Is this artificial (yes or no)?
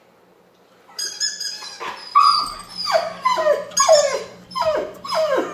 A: no